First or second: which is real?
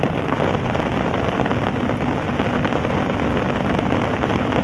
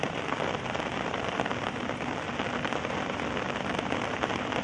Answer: first